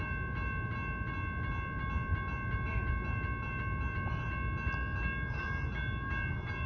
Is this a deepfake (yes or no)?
no